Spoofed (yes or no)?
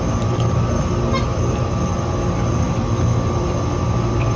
no